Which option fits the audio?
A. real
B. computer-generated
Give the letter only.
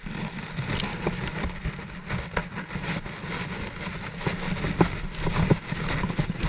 A